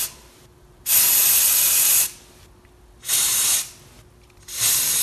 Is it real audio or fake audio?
real